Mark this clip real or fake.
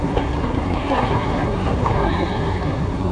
fake